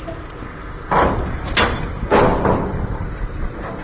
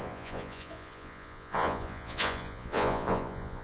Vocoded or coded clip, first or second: second